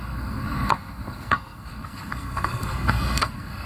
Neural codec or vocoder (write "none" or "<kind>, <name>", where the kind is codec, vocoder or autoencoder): codec, SNAC